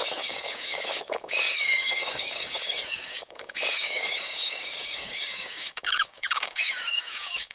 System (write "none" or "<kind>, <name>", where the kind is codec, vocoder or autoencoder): codec, DAC